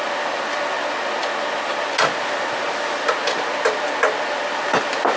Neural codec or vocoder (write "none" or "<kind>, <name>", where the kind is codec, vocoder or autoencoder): none